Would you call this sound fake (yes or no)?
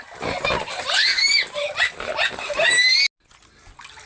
no